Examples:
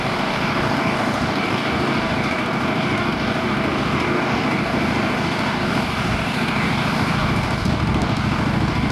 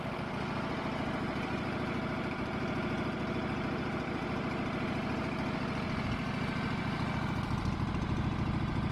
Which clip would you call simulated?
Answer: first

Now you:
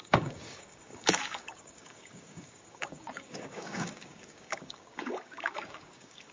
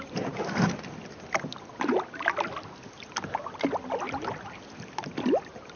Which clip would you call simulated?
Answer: first